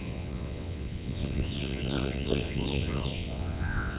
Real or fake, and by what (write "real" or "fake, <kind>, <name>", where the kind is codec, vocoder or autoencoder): fake, vocoder, WaveNeXt